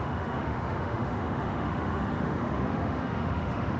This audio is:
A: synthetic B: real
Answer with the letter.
A